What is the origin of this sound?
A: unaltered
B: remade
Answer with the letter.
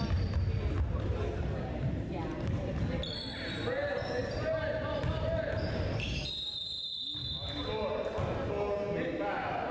A